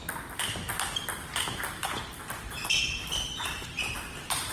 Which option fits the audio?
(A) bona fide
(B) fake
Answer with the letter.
A